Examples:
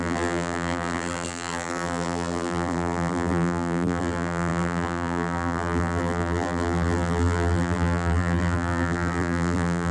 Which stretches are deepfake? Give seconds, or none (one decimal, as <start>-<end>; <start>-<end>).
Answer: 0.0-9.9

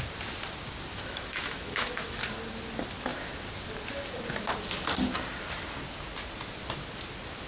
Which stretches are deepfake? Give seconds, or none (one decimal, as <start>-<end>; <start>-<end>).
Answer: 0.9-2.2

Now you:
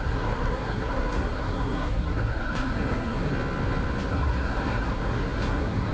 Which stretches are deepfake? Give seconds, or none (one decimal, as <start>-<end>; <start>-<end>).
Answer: 0.0-3.3; 4.1-5.9

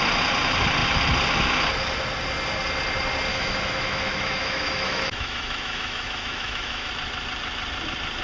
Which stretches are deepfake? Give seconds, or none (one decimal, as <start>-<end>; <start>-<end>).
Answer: 3.3-6.9